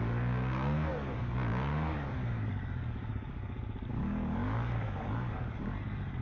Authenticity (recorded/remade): remade